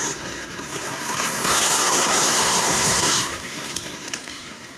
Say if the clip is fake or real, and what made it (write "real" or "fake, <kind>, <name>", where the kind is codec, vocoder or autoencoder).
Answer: fake, codec, SNAC